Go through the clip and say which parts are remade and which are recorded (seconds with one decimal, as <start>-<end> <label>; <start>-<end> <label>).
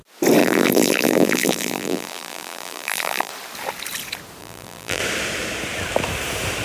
0.0-0.4 recorded; 0.4-3.3 remade; 3.3-4.4 recorded; 4.4-5.0 remade; 5.0-6.6 recorded